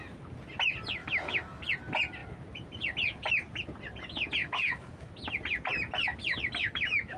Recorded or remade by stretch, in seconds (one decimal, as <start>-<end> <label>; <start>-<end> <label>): 0.0-1.0 recorded; 1.0-1.6 remade; 1.6-4.4 recorded; 4.4-5.1 remade; 5.1-6.6 recorded; 6.6-7.2 remade